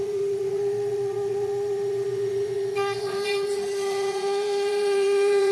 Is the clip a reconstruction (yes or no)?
yes